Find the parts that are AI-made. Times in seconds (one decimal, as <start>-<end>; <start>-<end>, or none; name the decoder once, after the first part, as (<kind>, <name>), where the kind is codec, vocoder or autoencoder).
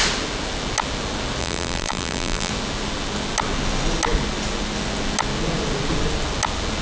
1.4-2.5 (vocoder, BigVGAN v2)